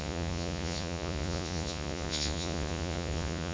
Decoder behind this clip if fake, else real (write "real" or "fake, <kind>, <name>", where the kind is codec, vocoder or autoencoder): fake, vocoder, Vocos